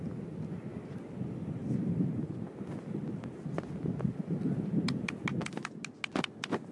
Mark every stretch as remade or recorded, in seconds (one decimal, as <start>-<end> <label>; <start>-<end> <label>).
0.0-6.7 recorded